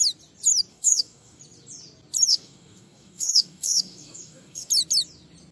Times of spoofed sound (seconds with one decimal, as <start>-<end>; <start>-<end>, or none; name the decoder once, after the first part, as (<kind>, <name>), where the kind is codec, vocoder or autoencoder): 0.7-1.4 (codec, DAC); 2.3-4.7